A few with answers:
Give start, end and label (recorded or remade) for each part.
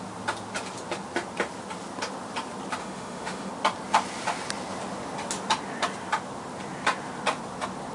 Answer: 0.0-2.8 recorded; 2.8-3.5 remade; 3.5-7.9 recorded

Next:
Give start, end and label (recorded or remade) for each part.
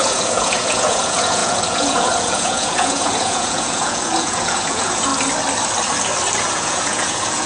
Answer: 0.0-5.1 remade; 5.1-6.4 recorded; 6.4-7.5 remade